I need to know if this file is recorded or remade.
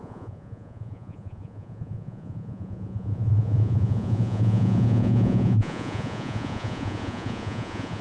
remade